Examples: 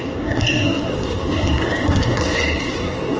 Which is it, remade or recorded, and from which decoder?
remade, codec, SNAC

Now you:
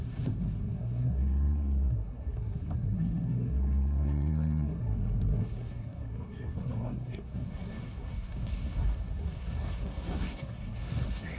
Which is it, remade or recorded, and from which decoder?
remade, codec, SNAC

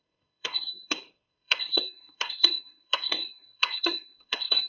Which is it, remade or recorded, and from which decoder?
remade, codec, SNAC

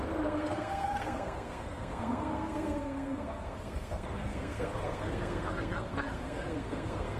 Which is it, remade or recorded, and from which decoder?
remade, codec, SNAC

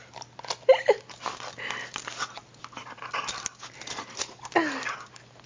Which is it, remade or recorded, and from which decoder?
recorded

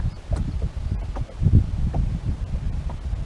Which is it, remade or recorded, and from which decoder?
recorded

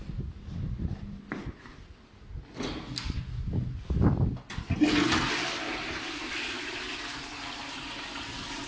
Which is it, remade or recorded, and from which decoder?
recorded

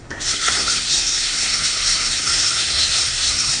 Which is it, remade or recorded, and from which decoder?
remade, codec, SNAC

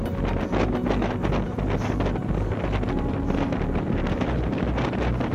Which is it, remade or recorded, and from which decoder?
recorded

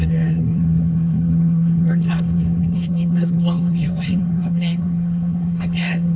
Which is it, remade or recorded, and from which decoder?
remade, codec, SNAC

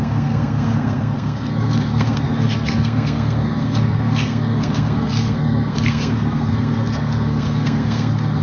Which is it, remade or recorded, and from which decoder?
remade, codec, SNAC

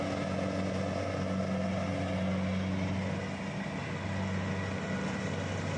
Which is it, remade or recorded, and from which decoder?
recorded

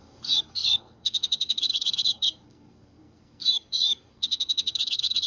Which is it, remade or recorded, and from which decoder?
remade, codec, SNAC